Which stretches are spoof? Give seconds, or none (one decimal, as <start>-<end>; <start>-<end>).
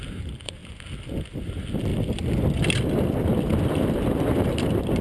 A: 0.0-0.6; 1.4-5.0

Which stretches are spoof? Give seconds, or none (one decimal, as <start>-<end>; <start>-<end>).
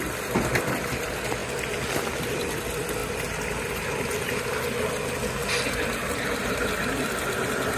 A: none